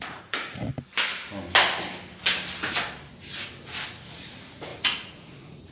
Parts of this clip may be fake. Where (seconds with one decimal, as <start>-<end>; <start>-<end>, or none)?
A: 0.0-0.7; 4.1-5.7